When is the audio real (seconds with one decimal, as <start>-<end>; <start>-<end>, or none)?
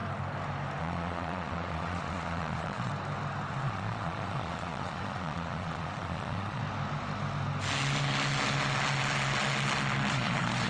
0.0-0.8; 2.9-3.5; 6.6-10.1